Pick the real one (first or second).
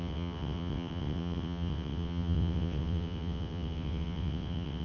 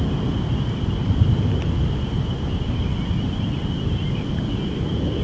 second